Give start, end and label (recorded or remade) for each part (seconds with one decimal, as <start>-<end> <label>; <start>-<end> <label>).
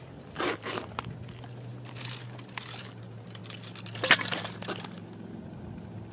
0.0-6.1 recorded